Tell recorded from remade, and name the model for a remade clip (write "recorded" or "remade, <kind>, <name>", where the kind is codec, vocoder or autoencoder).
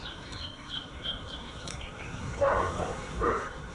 remade, codec, SNAC